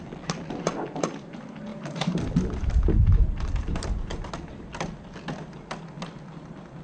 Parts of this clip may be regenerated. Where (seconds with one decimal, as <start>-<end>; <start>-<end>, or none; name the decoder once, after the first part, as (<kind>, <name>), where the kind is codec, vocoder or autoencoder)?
1.7-4.3 (vocoder, BigVGAN v2)